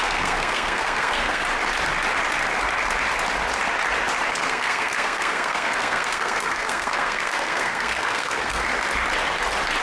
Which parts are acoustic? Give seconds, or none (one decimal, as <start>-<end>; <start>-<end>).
1.4-4.3; 8.7-9.8